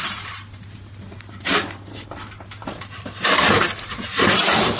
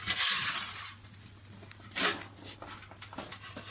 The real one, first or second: second